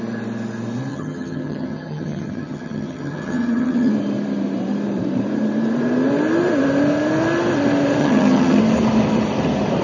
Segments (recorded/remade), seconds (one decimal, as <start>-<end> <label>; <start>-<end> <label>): 0.0-0.9 recorded; 0.9-3.9 remade; 3.9-8.0 recorded; 8.0-8.6 remade; 8.6-9.8 recorded